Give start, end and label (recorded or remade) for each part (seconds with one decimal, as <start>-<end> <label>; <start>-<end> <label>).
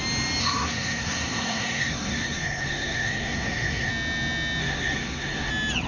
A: 0.0-0.4 recorded; 0.4-3.9 remade; 3.9-4.6 recorded; 4.6-5.5 remade; 5.5-5.9 recorded